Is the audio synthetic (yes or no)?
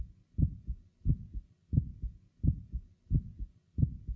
no